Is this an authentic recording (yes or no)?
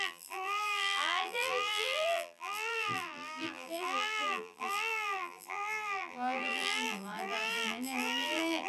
no